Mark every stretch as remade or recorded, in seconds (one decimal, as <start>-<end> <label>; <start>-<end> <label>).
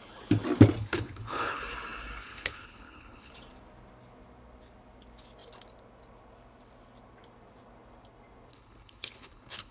0.0-0.8 recorded; 0.8-1.6 remade; 1.6-2.2 recorded; 2.2-3.3 remade; 3.3-8.5 recorded; 8.5-9.7 remade